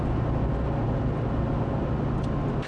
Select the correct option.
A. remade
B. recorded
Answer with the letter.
B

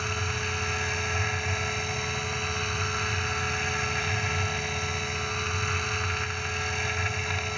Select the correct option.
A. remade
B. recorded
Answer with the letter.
B